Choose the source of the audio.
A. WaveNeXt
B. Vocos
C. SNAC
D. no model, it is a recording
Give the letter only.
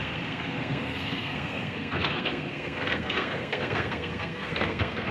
C